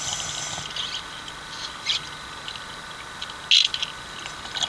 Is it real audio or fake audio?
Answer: real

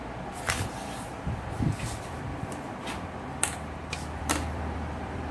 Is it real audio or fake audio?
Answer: fake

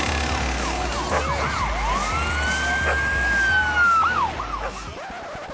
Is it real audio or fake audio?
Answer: real